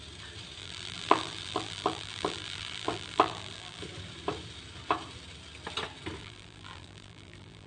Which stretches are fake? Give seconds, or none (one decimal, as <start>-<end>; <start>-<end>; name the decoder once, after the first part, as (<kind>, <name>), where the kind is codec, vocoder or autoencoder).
0.6-3.8 (vocoder, BigVGAN v2); 6.2-7.7